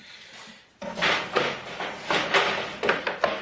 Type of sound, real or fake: real